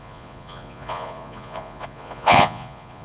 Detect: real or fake fake